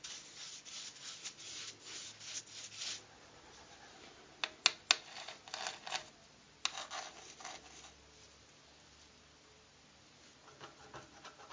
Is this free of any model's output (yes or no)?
yes